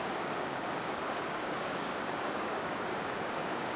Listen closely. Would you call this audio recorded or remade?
remade